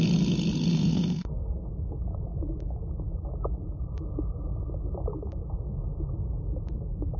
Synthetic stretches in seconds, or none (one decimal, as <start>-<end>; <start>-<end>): 0.7-1.7